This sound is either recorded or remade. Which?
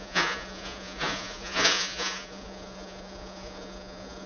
remade